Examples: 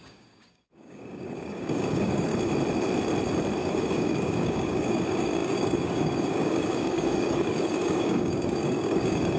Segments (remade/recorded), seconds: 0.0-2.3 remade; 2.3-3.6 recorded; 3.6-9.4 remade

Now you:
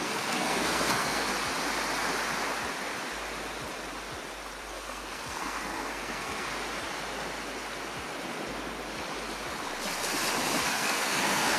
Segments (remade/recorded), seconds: 0.0-1.3 remade; 1.3-4.7 recorded; 4.7-6.5 remade; 6.5-10.6 recorded; 10.6-11.6 remade

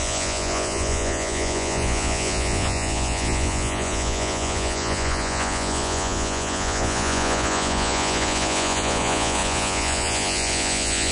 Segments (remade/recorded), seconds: 0.0-11.1 remade

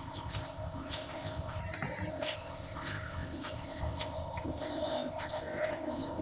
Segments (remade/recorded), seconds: 0.0-1.6 remade; 1.6-2.1 recorded; 2.1-6.2 remade

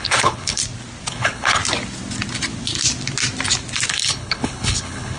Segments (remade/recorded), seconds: 0.0-0.6 remade; 0.6-1.1 recorded; 1.1-1.6 remade; 1.6-3.9 recorded; 3.9-5.2 remade

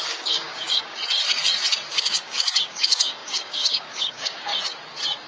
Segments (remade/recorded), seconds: 0.0-1.0 remade; 1.0-1.9 recorded; 1.9-4.5 remade; 4.5-5.3 recorded

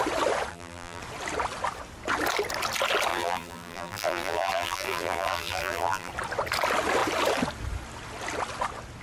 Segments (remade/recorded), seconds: 0.0-0.5 recorded; 0.5-1.0 remade; 1.0-3.1 recorded; 3.1-6.1 remade; 6.1-9.0 recorded

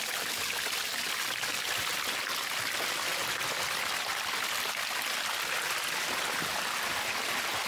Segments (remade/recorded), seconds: 0.0-7.7 recorded